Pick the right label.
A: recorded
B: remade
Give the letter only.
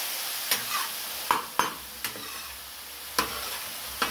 A